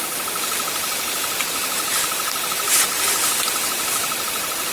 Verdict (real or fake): real